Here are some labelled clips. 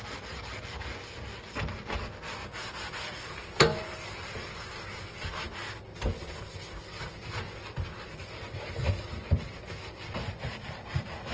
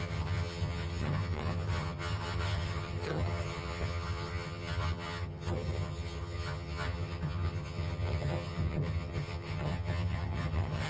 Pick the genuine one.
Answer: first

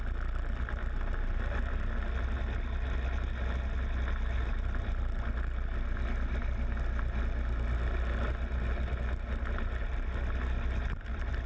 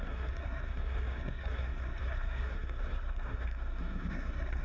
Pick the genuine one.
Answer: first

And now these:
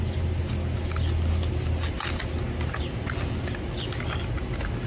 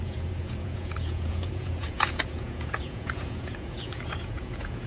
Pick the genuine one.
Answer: first